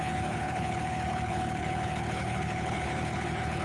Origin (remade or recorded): remade